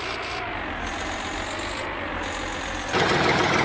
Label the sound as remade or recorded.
recorded